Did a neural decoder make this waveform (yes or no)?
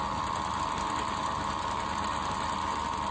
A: no